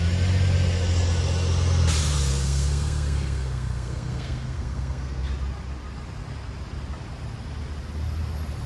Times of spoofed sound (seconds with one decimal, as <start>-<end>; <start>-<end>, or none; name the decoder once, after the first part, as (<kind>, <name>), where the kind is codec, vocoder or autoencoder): 2.3-5.3 (codec, SNAC)